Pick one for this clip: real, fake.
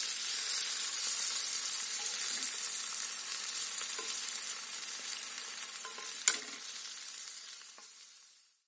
real